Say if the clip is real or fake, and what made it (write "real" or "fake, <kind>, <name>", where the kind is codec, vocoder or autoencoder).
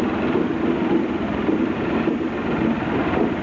real